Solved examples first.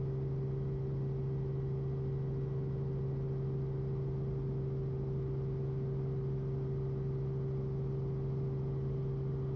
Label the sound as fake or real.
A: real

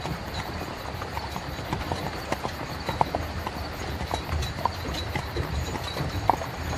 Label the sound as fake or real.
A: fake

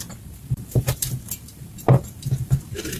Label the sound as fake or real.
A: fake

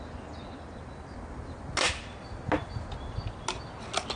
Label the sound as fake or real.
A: real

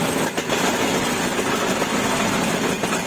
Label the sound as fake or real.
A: real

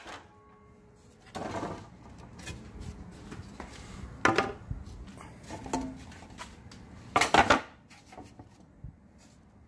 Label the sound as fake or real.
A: real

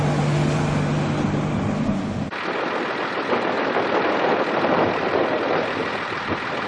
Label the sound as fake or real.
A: real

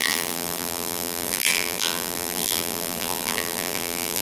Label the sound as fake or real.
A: fake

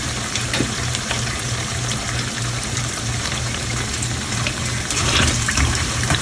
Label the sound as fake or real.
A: fake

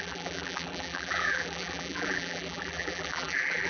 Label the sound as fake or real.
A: fake